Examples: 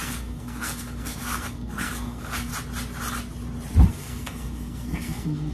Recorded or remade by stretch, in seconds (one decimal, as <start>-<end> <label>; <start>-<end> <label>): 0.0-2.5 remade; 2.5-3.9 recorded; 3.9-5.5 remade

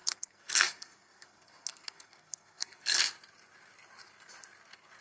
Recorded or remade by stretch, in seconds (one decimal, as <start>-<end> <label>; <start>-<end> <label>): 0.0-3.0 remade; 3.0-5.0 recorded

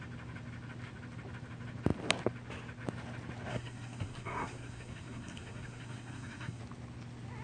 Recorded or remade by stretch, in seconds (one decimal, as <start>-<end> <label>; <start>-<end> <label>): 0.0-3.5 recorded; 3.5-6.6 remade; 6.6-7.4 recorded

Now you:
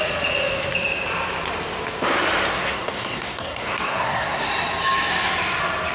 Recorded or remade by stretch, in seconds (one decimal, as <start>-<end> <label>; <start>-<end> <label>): 0.0-2.5 recorded; 2.5-4.5 remade; 4.5-5.9 recorded

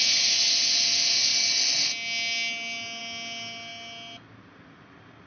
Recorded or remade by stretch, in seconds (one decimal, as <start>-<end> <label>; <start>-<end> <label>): 0.0-5.3 recorded